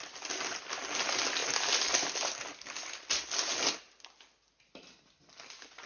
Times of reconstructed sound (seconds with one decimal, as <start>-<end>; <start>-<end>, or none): none